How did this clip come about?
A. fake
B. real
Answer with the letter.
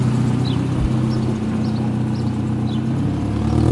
B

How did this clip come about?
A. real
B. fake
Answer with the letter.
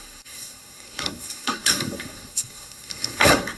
B